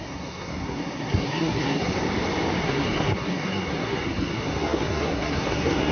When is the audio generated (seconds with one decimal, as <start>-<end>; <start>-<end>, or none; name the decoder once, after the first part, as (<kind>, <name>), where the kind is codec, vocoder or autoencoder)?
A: 0.0-1.9 (codec, SNAC); 2.6-5.9